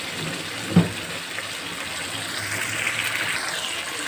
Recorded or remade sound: recorded